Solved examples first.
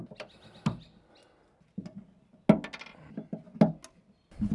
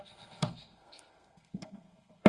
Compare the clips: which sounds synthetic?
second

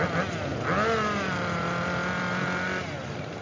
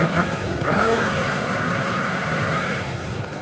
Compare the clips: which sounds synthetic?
second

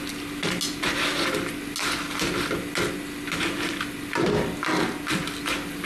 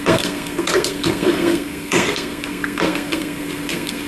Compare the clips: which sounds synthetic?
second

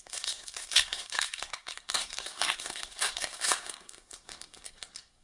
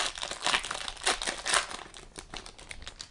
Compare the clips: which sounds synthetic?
first